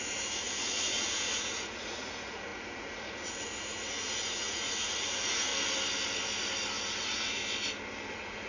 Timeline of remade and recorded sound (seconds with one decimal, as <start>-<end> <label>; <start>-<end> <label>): 0.0-5.5 remade; 5.5-7.0 recorded; 7.0-7.4 remade; 7.4-8.1 recorded; 8.1-8.5 remade